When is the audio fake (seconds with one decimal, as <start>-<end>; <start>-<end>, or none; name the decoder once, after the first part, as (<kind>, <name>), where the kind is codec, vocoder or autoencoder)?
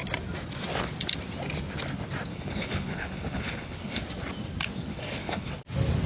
2.3-4.0 (codec, HILCodec); 4.9-5.5